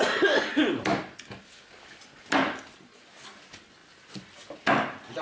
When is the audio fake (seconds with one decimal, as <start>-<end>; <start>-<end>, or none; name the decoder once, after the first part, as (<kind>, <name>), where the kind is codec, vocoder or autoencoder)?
none